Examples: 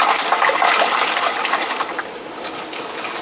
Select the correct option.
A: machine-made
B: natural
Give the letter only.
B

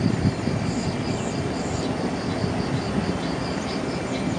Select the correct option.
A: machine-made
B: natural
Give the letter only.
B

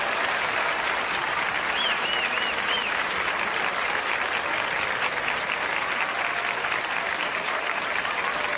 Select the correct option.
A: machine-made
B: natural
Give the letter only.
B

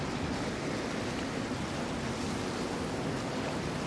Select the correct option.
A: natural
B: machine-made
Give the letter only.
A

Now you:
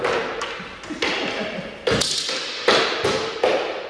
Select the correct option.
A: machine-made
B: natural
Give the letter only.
B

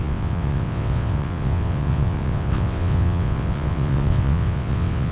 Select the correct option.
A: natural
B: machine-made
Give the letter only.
B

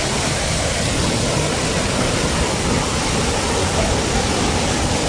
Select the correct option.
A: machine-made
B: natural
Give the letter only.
B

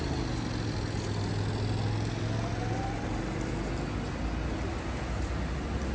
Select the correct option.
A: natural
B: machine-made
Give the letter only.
A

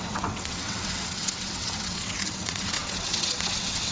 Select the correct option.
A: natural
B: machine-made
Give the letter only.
B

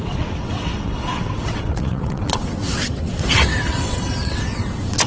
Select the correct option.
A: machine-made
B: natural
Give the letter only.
A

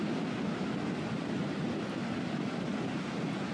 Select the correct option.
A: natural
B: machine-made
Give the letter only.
A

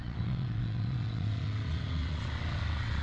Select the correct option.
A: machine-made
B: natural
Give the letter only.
A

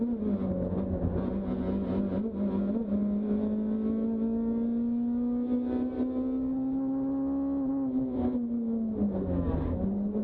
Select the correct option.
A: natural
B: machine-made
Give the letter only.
A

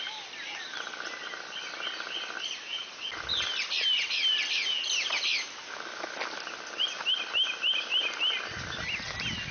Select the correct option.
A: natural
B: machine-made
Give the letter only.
A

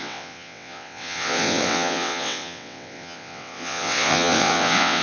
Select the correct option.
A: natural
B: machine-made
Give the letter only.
B